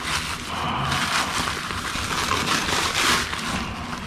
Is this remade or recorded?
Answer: recorded